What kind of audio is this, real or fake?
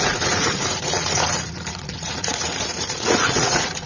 fake